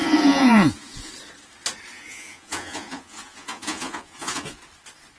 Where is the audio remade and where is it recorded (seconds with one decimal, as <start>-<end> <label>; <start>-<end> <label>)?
0.0-1.1 remade; 1.1-1.9 recorded; 1.9-4.6 remade; 4.6-5.2 recorded